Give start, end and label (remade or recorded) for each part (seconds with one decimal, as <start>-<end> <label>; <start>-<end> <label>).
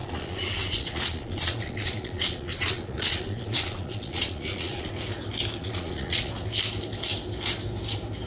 0.0-4.9 remade; 4.9-5.6 recorded; 5.6-6.3 remade; 6.3-8.3 recorded